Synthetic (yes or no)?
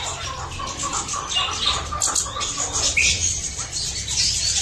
no